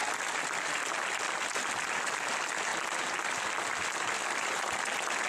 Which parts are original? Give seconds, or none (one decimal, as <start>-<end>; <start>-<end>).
0.0-5.3